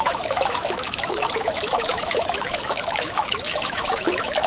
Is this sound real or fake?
fake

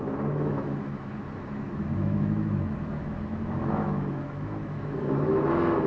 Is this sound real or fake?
fake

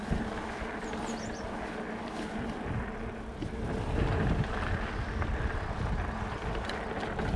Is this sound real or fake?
real